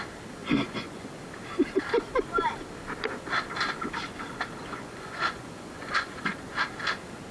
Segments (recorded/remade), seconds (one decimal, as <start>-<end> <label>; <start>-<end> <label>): 0.0-0.4 recorded; 0.4-1.1 remade; 1.1-4.6 recorded; 4.6-6.5 remade; 6.5-7.3 recorded

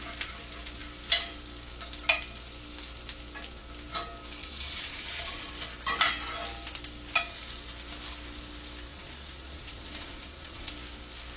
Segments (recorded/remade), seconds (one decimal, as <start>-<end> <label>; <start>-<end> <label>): 0.0-4.4 recorded; 4.4-5.5 remade; 5.5-8.9 recorded; 8.9-10.7 remade; 10.7-11.4 recorded

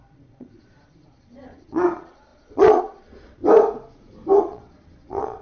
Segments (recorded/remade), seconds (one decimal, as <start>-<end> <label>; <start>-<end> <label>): 0.0-3.4 remade; 3.4-4.4 recorded; 4.4-5.4 remade

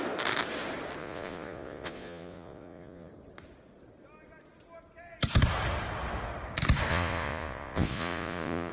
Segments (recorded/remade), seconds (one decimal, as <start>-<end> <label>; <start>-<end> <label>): 0.0-1.0 recorded; 1.0-3.1 remade; 3.1-6.9 recorded; 6.9-8.7 remade